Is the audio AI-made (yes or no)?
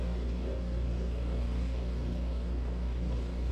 yes